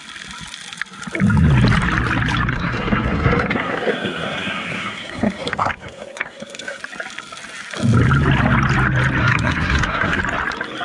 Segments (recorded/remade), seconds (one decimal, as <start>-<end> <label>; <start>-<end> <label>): 0.0-2.5 recorded; 2.5-6.8 remade; 6.8-9.2 recorded; 9.2-10.2 remade; 10.2-10.8 recorded